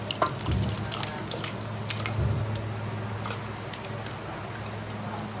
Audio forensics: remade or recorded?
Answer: recorded